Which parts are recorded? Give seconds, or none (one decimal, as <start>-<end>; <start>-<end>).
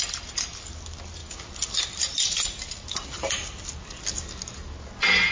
0.0-1.2; 4.0-5.3